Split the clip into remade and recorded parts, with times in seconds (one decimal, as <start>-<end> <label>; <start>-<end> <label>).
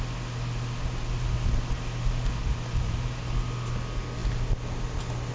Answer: 0.0-2.4 recorded; 2.4-3.3 remade; 3.3-5.3 recorded